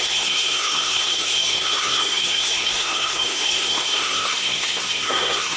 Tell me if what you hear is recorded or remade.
remade